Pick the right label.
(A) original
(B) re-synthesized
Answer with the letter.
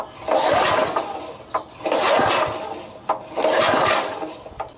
A